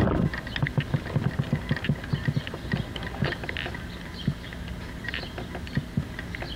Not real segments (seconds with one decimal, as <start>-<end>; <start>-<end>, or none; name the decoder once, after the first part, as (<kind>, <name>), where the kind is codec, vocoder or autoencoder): none